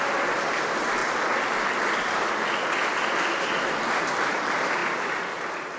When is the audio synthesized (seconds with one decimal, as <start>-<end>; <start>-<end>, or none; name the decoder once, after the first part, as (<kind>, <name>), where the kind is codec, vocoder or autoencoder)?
none